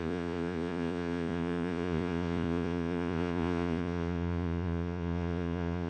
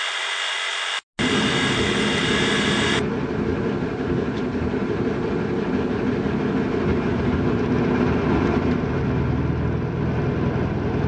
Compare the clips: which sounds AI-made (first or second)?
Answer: first